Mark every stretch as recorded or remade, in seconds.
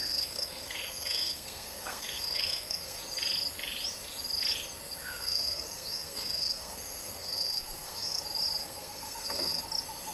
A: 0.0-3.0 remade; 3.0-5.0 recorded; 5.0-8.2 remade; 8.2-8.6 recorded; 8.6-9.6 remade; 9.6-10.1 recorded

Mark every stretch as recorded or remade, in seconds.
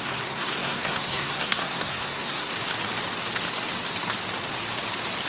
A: 0.0-2.5 remade; 2.5-5.3 recorded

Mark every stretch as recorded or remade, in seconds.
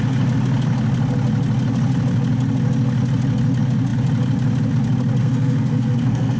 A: 0.0-5.2 recorded; 5.2-6.4 remade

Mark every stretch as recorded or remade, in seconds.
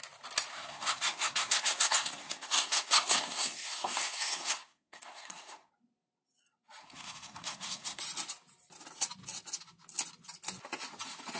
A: 0.0-0.5 recorded; 0.5-5.7 remade; 5.7-6.8 recorded; 6.8-8.0 remade; 8.0-11.4 recorded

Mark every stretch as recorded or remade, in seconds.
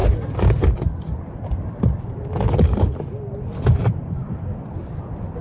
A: 0.0-5.4 recorded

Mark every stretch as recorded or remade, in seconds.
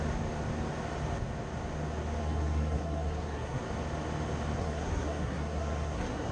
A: 0.0-2.2 recorded; 2.2-3.6 remade; 3.6-4.6 recorded; 4.6-6.3 remade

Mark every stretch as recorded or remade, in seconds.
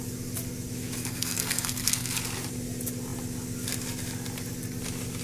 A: 0.0-1.0 recorded; 1.0-2.2 remade; 2.2-5.2 recorded